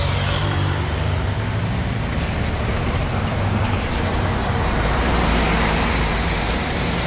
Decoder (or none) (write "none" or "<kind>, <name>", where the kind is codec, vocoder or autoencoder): vocoder, BigVGAN v2